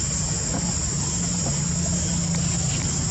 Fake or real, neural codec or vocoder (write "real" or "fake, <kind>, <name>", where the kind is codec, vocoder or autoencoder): real